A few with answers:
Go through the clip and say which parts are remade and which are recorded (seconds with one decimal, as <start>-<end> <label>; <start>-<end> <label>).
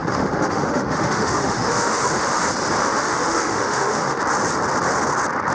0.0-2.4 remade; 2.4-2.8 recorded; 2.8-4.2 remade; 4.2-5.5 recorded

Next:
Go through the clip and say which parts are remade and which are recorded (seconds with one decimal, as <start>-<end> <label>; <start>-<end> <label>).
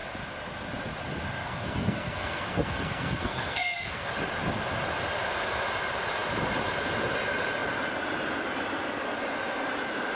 0.0-1.4 recorded; 1.4-4.1 remade; 4.1-10.2 recorded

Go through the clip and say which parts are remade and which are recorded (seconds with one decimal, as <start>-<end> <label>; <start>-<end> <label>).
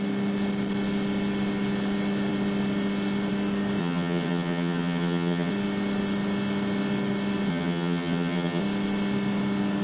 0.0-3.8 recorded; 3.8-5.5 remade; 5.5-7.5 recorded; 7.5-8.6 remade; 8.6-9.8 recorded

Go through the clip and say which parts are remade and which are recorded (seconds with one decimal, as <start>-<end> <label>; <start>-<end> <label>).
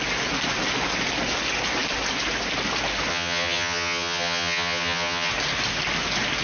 0.0-3.1 recorded; 3.1-5.3 remade; 5.3-6.4 recorded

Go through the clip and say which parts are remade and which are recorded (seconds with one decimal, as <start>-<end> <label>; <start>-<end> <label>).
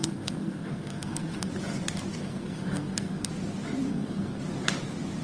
0.0-1.5 remade; 1.5-2.2 recorded; 2.2-3.3 remade; 3.3-3.9 recorded; 3.9-4.4 remade; 4.4-5.2 recorded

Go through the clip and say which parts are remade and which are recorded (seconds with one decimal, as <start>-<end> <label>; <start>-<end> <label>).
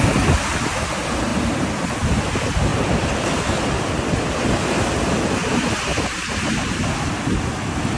0.0-5.9 recorded; 5.9-6.4 remade; 6.4-8.0 recorded